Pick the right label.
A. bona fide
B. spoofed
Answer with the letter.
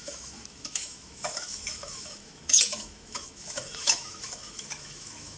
B